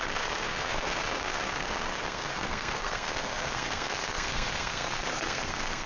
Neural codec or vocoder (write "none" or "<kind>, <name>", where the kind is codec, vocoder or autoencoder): codec, SNAC